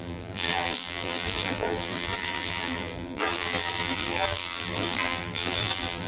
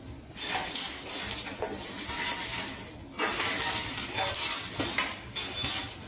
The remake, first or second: first